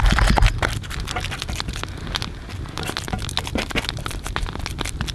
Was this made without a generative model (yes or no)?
yes